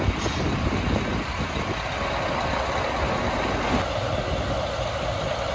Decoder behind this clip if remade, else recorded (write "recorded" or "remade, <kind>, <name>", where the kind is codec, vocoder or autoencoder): recorded